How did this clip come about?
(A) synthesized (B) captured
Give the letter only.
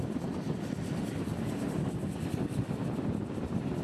B